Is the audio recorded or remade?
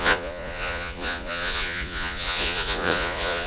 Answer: remade